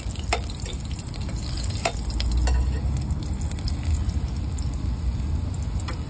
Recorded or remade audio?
recorded